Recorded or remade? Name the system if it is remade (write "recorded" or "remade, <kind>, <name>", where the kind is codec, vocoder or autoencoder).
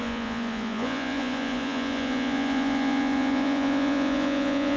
remade, vocoder, Vocos